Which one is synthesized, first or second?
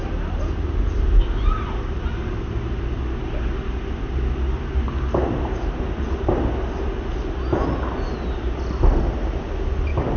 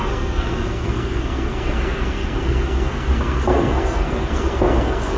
second